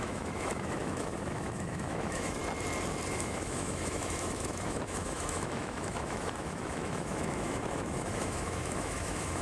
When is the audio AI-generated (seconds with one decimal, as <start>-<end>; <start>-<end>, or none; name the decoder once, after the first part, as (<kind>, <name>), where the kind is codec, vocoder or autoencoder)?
0.0-2.4 (autoencoder, DAC-VAE); 3.1-9.4